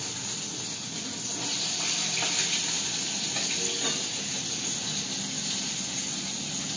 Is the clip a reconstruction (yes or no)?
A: no